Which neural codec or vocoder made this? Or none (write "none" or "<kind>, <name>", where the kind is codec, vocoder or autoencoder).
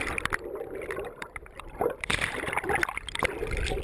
vocoder, BigVGAN v2